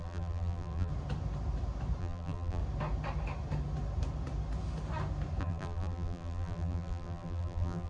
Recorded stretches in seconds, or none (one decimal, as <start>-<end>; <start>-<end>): 0.9-2.0; 2.6-5.4